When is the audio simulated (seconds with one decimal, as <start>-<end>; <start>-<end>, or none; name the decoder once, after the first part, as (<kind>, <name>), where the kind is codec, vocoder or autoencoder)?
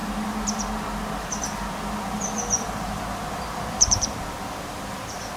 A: 1.2-5.4 (vocoder, BigVGAN v2)